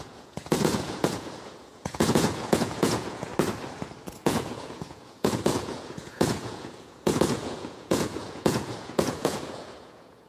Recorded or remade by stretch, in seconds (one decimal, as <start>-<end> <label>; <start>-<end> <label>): 0.0-3.3 remade; 3.3-4.1 recorded; 4.1-10.3 remade

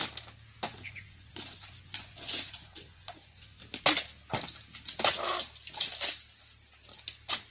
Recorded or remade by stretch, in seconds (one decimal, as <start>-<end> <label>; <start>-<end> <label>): 0.0-0.7 recorded; 0.7-3.6 remade; 3.6-7.5 recorded

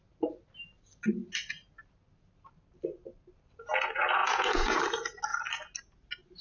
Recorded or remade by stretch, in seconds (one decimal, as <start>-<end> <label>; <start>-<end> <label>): 0.0-4.2 recorded; 4.2-4.8 remade; 4.8-6.4 recorded